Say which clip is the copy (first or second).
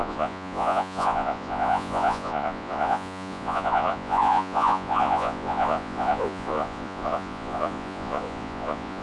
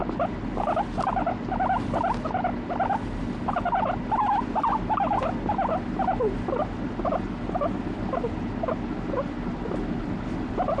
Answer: first